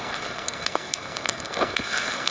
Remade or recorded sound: remade